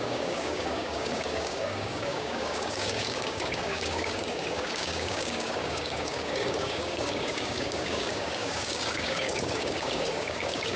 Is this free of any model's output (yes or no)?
no